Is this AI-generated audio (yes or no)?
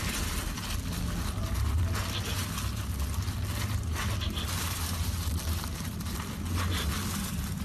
no